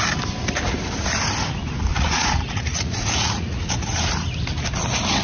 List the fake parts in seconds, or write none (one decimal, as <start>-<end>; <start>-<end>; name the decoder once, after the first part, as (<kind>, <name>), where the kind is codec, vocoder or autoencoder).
1.9-3.6 (vocoder, Vocos)